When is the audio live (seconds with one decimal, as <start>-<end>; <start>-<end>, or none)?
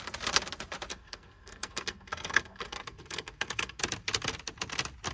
0.0-0.9; 3.8-5.1